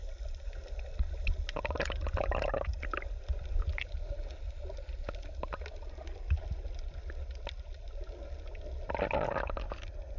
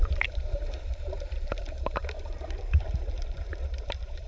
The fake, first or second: second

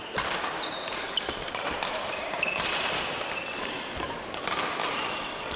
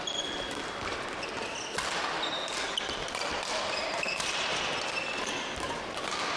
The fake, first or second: first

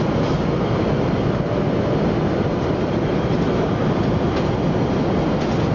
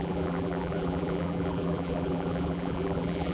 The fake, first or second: second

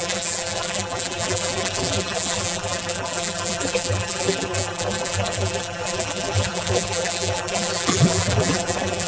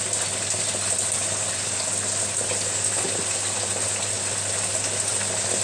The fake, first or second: first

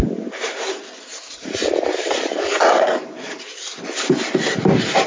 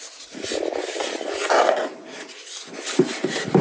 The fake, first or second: first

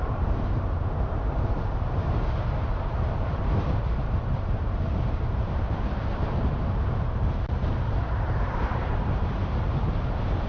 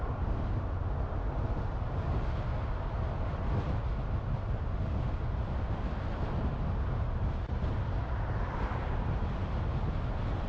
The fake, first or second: first